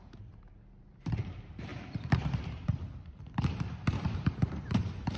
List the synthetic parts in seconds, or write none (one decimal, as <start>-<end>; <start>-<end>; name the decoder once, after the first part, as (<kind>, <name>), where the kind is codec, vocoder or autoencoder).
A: 0.0-5.2 (vocoder, BigVGAN v2)